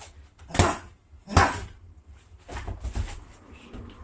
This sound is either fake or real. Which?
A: real